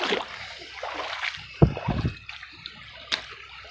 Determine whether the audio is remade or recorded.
recorded